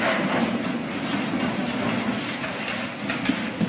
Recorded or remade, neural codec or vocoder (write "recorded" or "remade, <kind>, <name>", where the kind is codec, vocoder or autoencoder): recorded